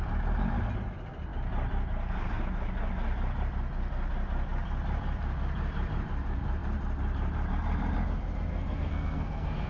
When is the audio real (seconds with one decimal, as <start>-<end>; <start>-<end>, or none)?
0.0-8.5